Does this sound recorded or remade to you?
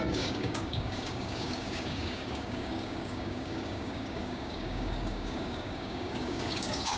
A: remade